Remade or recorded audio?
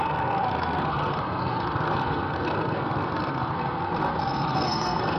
remade